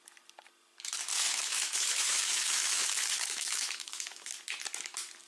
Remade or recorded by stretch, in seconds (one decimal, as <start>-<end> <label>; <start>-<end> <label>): 0.0-1.1 recorded; 1.1-4.3 remade; 4.3-5.3 recorded